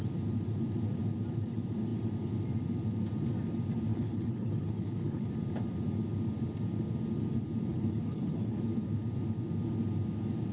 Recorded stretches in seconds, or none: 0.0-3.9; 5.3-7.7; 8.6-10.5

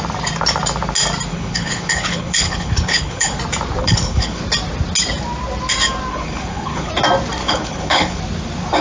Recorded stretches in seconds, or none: 0.0-1.3; 3.4-3.8; 4.4-6.1; 6.9-7.4; 8.2-8.8

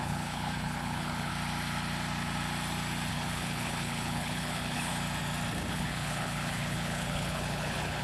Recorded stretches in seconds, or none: 1.3-3.1; 4.9-5.7

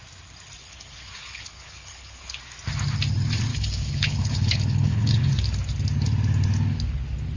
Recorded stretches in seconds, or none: 0.0-0.6; 2.4-3.5; 5.3-7.4

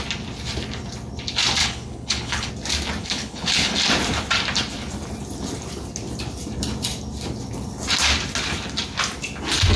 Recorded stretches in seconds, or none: 0.0-1.6; 2.5-3.0; 3.7-9.8

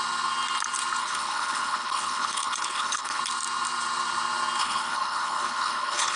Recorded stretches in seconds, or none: 0.0-1.0; 3.2-4.6

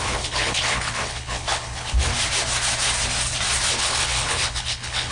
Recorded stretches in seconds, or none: 2.1-3.8

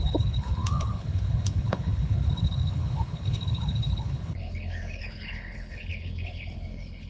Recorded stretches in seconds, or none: none